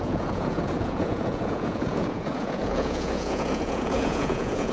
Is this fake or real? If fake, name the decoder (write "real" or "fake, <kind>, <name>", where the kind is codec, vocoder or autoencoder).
fake, vocoder, Vocos